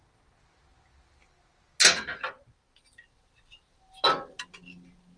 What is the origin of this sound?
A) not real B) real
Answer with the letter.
B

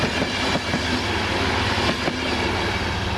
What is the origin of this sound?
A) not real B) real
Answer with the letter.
B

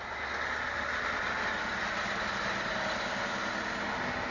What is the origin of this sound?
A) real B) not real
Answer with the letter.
A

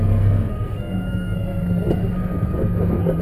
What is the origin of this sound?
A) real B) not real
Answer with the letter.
B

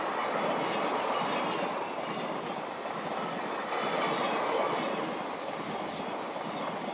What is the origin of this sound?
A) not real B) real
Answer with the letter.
B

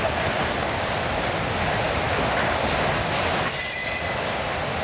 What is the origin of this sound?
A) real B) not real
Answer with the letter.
A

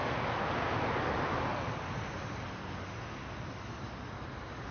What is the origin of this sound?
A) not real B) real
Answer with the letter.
B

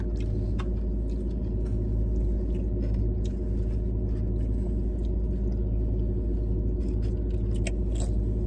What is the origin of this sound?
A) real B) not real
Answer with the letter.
A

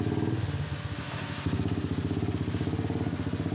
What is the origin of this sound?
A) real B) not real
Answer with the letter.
A